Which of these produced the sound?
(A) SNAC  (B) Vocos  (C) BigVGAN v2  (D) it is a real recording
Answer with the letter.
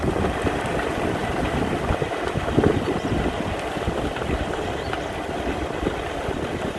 D